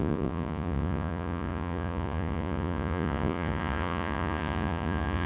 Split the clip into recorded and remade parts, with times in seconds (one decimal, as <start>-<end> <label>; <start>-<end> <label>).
0.0-5.3 remade